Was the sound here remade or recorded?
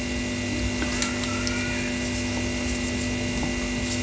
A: recorded